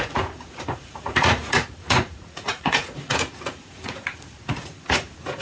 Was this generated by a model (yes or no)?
yes